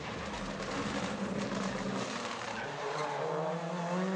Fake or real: real